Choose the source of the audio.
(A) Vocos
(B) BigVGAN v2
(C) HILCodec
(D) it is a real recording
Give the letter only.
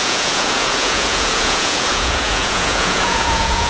A